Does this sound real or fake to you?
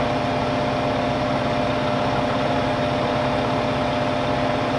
real